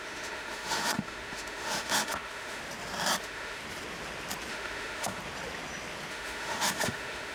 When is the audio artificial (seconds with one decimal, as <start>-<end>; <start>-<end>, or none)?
0.0-2.6; 3.2-3.6; 4.5-5.2; 6.1-7.3